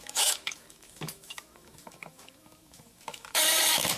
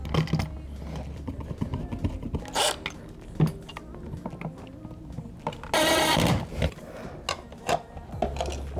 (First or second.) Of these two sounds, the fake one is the first